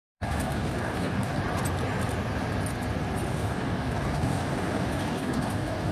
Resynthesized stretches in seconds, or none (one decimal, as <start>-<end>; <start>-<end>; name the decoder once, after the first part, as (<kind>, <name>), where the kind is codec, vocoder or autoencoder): 0.0-1.4 (codec, DAC); 3.3-5.9